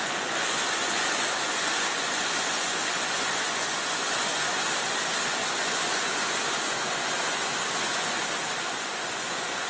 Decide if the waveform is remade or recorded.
remade